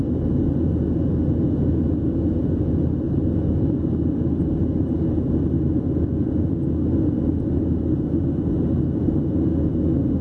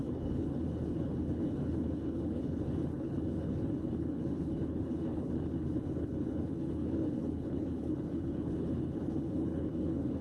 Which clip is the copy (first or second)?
second